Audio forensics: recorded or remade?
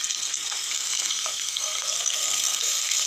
remade